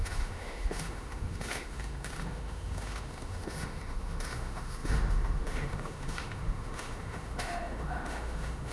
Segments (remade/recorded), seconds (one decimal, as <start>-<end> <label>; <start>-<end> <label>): 0.0-8.7 remade